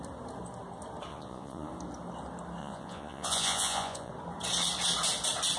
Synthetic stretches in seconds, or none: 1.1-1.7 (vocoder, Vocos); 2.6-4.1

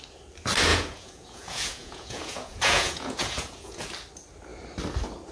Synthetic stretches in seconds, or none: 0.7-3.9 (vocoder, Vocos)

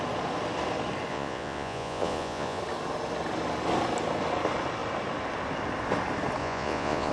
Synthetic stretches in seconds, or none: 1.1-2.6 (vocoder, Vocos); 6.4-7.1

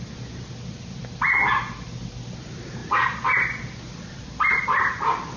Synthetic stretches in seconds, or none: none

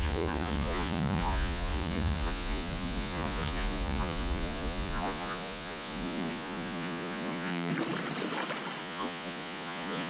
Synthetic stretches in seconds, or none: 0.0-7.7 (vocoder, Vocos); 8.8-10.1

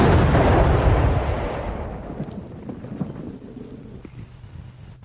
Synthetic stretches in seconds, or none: none